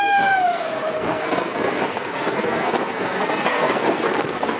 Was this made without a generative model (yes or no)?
no